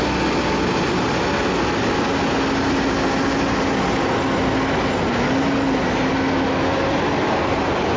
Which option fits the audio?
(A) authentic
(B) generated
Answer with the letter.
A